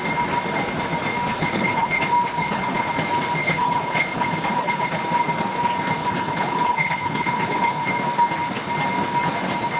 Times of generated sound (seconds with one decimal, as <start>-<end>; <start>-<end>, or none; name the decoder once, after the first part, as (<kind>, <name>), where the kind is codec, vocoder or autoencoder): 1.3-2.0 (codec, HILCodec); 2.4-2.9; 3.4-5.0; 6.0-7.9